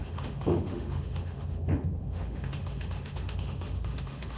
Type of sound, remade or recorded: remade